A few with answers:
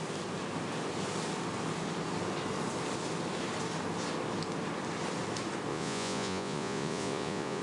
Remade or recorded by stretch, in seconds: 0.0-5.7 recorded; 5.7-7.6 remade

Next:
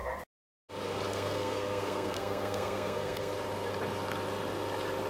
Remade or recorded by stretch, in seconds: 0.0-1.1 recorded; 1.1-3.3 remade; 3.3-5.1 recorded